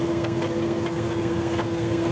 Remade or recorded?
remade